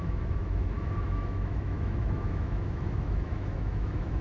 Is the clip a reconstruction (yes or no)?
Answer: yes